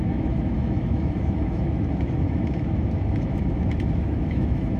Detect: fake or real fake